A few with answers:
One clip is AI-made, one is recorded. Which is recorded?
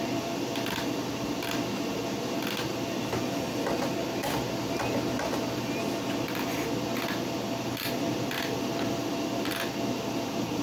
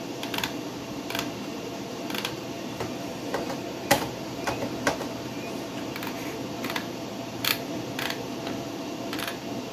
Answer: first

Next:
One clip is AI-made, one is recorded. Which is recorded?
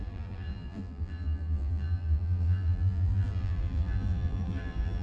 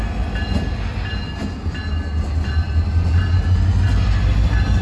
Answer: second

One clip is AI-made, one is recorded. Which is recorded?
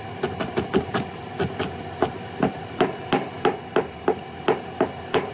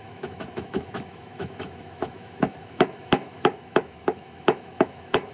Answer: first